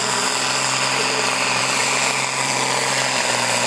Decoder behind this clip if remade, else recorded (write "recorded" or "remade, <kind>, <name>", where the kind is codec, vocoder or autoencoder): remade, vocoder, BigVGAN v2